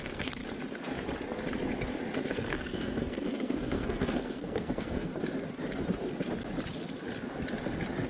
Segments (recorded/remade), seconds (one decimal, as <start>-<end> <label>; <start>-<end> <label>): 0.0-0.4 remade; 0.4-2.3 recorded; 2.3-5.1 remade; 5.1-8.1 recorded